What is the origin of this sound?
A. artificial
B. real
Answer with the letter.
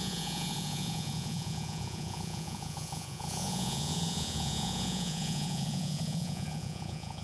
A